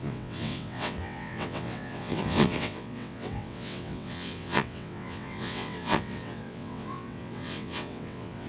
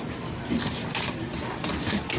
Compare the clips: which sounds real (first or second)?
second